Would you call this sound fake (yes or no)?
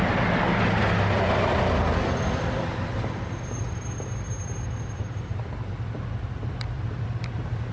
yes